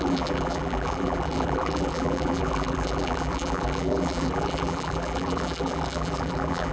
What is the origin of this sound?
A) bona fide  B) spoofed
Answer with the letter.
B